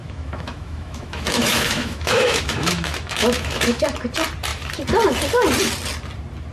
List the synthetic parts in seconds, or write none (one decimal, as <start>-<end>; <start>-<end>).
0.0-3.9